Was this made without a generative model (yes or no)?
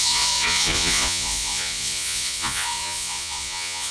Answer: no